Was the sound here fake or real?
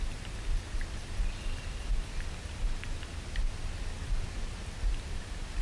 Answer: real